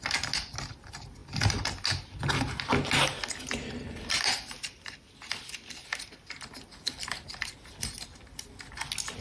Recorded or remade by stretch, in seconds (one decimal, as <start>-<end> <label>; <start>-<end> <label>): 0.0-9.2 recorded